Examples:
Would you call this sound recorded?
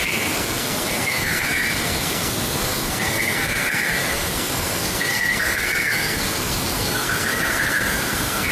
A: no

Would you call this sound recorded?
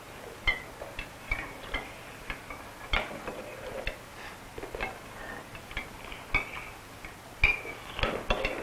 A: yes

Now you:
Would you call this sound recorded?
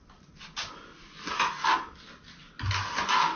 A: yes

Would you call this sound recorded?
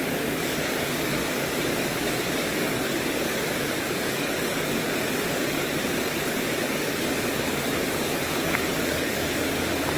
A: no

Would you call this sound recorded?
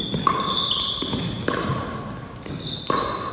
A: yes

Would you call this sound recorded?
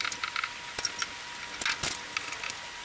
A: yes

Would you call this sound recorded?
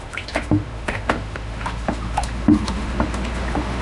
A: no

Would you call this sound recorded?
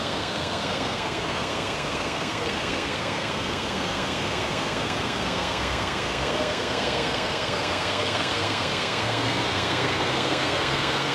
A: no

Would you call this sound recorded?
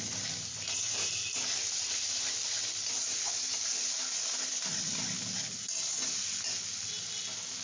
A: yes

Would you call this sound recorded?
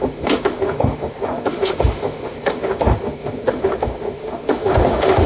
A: no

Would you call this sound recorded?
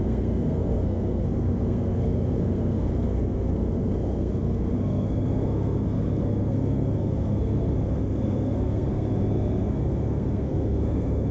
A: no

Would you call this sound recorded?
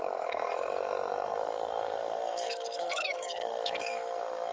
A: no